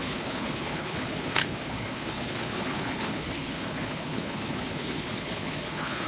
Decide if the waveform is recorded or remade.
remade